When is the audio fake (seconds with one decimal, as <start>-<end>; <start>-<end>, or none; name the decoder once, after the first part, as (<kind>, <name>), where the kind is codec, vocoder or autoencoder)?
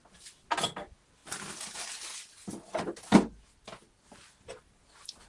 none